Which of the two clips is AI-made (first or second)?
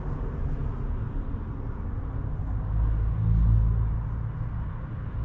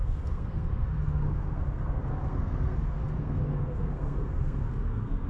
second